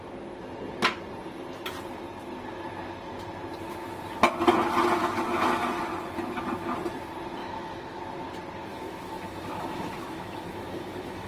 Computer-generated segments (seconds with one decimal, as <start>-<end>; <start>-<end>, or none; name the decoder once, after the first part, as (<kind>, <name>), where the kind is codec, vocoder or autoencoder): 7.4-8.0 (autoencoder, DAC-VAE); 8.7-11.3